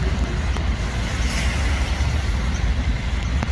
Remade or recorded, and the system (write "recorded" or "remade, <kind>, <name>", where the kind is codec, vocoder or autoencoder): recorded